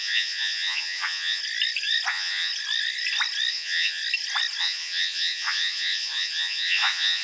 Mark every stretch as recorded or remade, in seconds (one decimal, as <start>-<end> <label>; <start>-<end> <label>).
0.0-1.4 remade; 1.4-2.1 recorded; 2.1-2.5 remade; 2.5-3.5 recorded; 3.5-4.0 remade; 4.0-4.6 recorded; 4.6-7.2 remade